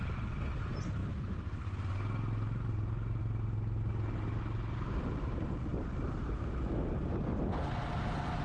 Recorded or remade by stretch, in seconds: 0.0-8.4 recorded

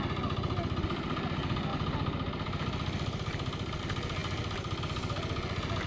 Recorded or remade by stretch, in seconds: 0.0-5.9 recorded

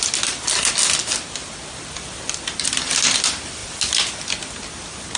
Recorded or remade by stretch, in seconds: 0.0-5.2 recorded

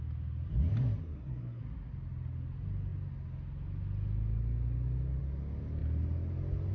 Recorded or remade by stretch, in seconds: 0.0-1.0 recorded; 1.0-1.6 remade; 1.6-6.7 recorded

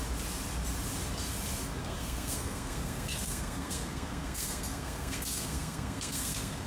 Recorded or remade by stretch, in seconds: 0.0-1.8 recorded; 1.8-6.7 remade

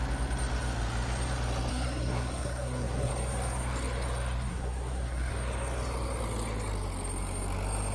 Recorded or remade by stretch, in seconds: 0.0-1.7 recorded; 1.7-3.1 remade; 3.1-4.5 recorded; 4.5-5.3 remade; 5.3-7.9 recorded